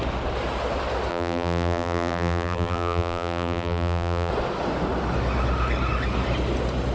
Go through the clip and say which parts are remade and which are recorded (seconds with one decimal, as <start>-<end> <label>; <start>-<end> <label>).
0.0-1.1 recorded; 1.1-4.3 remade; 4.3-6.9 recorded